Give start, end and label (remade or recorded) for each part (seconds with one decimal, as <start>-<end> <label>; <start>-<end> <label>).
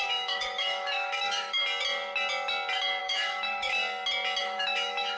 0.0-1.6 remade; 1.6-3.0 recorded; 3.0-3.8 remade; 3.8-4.4 recorded; 4.4-5.2 remade